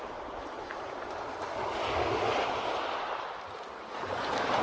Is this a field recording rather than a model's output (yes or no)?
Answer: yes